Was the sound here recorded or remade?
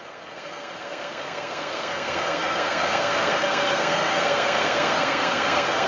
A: remade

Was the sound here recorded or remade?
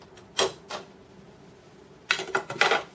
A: recorded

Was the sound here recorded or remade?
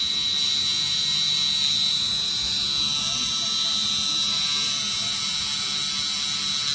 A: recorded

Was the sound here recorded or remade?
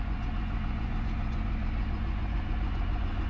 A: remade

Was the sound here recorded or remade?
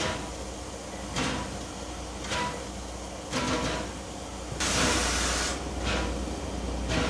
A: recorded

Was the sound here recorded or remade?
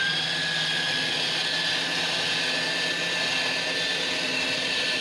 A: recorded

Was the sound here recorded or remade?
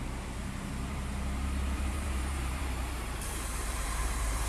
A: remade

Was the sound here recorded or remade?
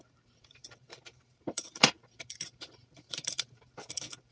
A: remade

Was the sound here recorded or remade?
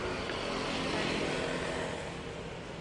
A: recorded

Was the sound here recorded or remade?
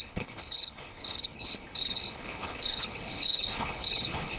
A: remade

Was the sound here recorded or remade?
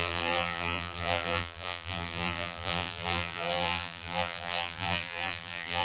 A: remade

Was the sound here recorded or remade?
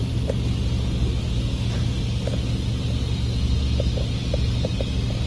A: recorded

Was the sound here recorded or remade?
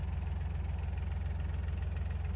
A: recorded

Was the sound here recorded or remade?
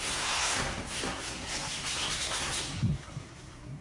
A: remade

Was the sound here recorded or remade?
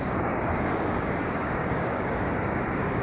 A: remade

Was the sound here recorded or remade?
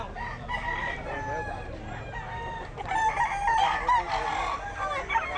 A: recorded